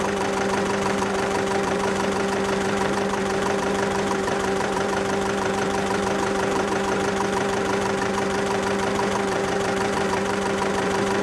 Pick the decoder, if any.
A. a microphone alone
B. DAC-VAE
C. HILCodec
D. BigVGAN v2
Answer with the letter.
D